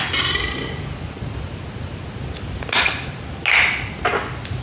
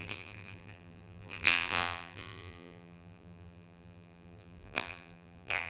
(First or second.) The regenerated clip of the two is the second